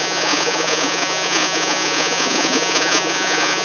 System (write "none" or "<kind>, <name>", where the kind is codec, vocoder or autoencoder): vocoder, Vocos